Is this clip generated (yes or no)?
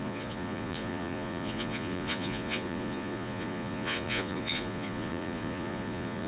yes